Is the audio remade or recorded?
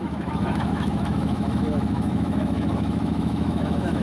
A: remade